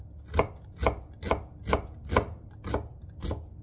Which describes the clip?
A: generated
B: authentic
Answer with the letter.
B